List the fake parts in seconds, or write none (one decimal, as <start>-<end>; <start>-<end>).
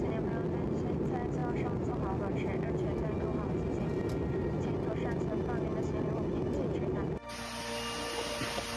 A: none